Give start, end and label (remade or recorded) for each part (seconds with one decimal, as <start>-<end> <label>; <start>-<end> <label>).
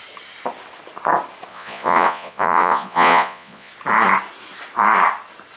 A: 0.0-1.5 recorded; 1.5-3.7 remade; 3.7-5.6 recorded